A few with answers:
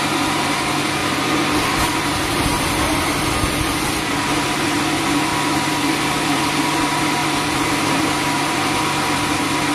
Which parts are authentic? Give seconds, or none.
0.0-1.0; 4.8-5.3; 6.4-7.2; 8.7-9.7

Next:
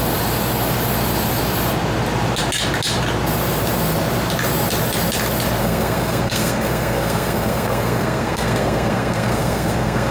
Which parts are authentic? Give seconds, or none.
0.0-5.6

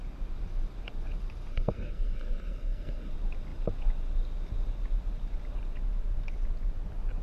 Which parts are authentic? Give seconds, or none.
0.0-1.5; 3.1-7.2

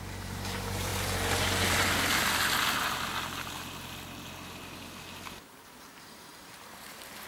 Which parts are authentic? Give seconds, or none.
0.9-5.3

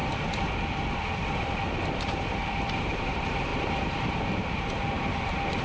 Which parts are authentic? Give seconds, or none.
0.0-2.0